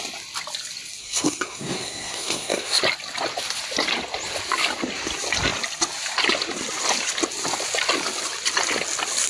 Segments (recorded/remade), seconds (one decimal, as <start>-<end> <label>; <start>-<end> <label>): 0.0-1.0 recorded; 1.0-2.8 remade; 2.8-9.3 recorded